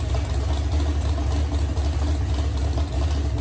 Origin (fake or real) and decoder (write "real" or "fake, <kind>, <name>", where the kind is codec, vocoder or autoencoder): real